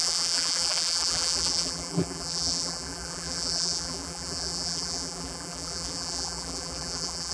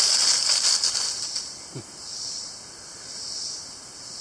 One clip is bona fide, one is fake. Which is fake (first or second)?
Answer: first